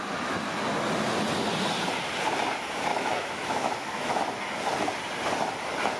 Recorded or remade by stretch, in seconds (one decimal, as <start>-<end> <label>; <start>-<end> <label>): 0.0-2.9 recorded; 2.9-4.2 remade; 4.2-6.0 recorded